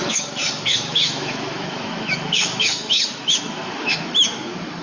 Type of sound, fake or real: fake